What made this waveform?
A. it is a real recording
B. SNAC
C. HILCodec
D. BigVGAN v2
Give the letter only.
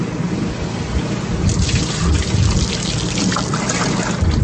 A